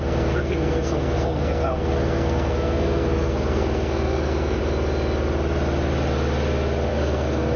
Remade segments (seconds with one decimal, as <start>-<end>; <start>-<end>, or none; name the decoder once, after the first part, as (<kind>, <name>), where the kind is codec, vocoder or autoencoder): 0.0-4.6 (codec, SNAC); 6.9-7.6